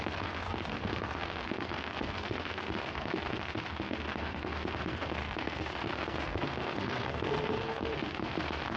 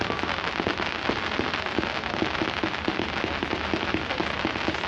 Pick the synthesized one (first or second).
first